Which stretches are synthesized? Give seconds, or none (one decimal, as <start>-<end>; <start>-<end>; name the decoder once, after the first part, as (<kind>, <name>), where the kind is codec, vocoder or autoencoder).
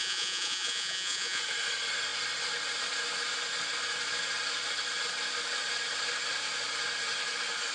0.0-1.4 (vocoder, Vocos)